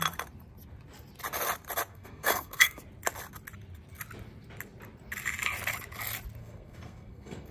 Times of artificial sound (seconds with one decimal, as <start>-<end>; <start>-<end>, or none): 1.9-2.8; 6.4-7.5